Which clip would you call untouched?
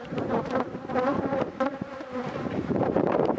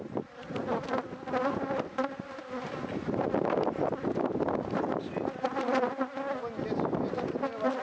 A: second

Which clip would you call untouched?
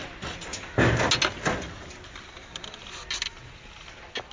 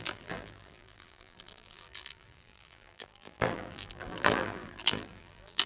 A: first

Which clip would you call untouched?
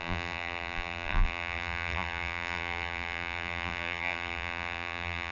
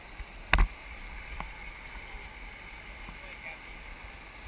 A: second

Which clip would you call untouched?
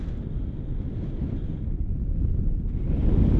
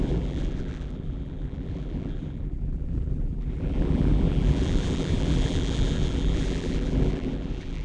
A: first